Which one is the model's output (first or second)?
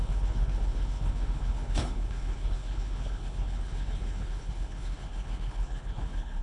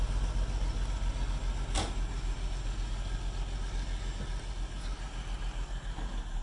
first